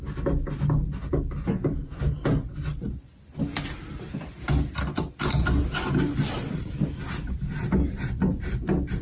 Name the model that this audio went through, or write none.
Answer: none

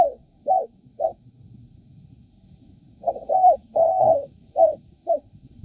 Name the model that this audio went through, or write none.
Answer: codec, SNAC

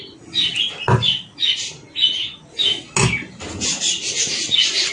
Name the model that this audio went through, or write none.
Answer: none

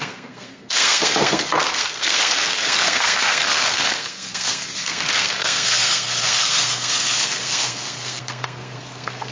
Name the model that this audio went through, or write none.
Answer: codec, SNAC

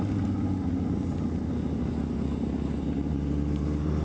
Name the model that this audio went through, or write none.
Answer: none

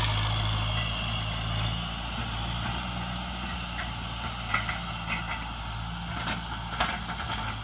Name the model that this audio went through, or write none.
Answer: none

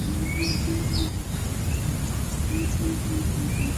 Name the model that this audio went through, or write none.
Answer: none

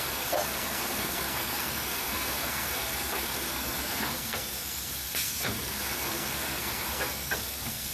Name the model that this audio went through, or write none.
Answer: codec, SNAC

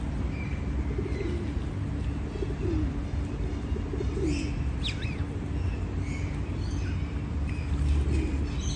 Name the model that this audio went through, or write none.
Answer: none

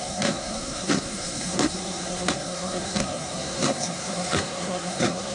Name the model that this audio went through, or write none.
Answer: codec, SNAC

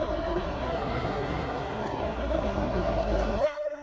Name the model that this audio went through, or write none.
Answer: codec, SNAC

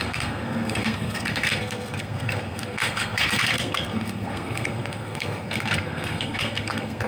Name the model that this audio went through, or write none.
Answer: codec, SNAC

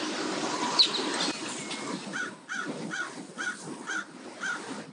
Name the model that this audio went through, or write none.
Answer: none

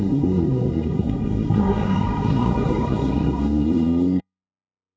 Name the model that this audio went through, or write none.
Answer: codec, SNAC